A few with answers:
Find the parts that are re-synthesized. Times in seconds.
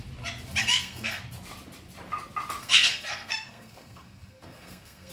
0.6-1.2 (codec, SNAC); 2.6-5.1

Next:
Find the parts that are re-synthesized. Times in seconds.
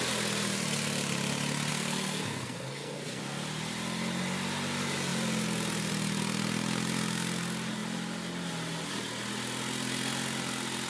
1.7-3.2 (codec, SNAC)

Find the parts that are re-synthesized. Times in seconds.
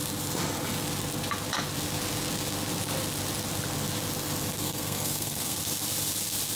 4.6-5.6 (codec, SNAC)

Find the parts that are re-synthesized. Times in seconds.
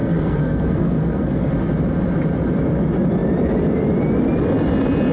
0.0-1.5 (codec, SNAC)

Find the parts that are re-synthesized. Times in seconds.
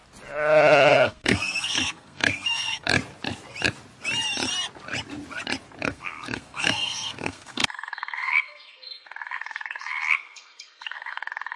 0.9-2.9 (codec, SNAC); 5.8-11.6